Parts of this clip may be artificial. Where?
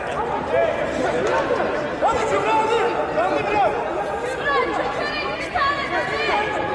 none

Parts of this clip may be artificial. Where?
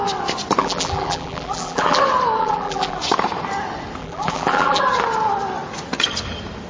0.6-2.0 (vocoder, BigVGAN v2); 2.4-3.0; 4.0-4.8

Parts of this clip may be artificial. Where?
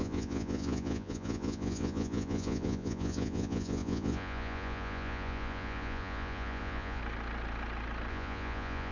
0.0-7.0 (vocoder, Vocos); 8.1-8.9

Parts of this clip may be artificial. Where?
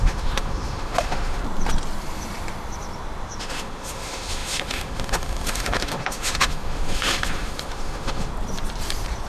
0.0-1.4 (autoencoder, DAC-VAE); 3.4-8.3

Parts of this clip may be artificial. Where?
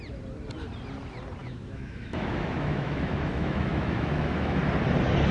1.4-4.6 (autoencoder, DAC-VAE)